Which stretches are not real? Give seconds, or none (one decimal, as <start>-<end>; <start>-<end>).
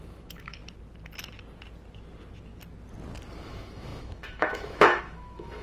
0.0-0.6; 3.4-5.6